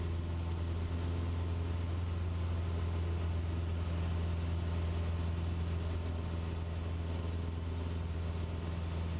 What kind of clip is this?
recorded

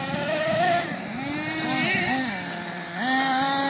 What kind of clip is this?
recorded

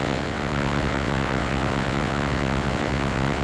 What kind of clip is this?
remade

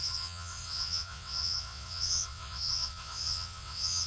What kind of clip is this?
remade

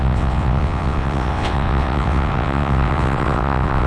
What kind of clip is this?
remade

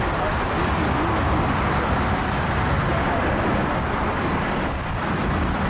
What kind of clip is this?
recorded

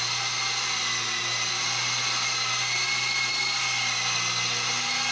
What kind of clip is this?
recorded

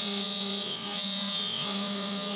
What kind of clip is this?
remade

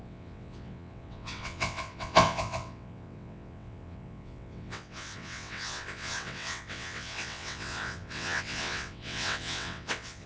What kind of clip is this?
remade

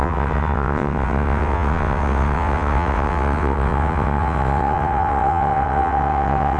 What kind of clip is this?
remade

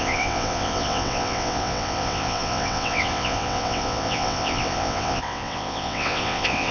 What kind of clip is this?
remade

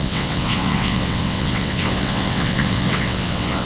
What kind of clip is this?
remade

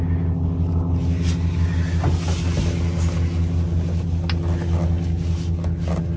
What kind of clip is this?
recorded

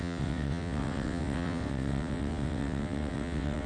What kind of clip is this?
remade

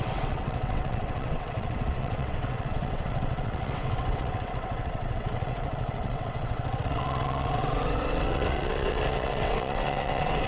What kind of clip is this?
remade